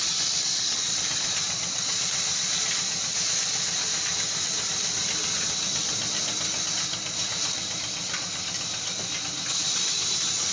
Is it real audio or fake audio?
real